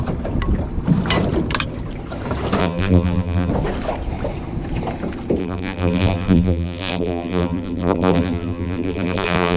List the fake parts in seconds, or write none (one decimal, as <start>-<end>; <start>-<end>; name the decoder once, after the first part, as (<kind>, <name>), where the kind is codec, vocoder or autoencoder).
2.6-3.5 (vocoder, BigVGAN v2); 5.4-9.6